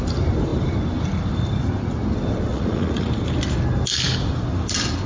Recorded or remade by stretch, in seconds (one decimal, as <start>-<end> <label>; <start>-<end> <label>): 0.0-2.5 recorded; 2.5-3.1 remade; 3.1-5.1 recorded